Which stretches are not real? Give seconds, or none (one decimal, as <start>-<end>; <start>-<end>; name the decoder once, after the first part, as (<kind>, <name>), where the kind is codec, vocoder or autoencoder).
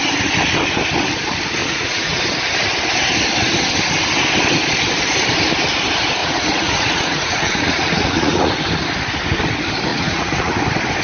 1.6-2.2 (vocoder, Vocos); 6.2-8.5; 9.9-10.6